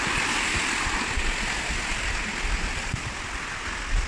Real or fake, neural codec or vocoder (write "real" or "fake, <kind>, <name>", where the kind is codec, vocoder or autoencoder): real